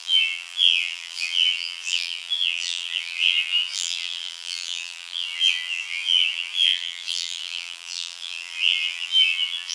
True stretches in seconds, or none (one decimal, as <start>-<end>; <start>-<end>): none